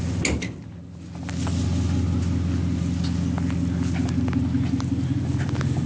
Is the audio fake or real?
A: real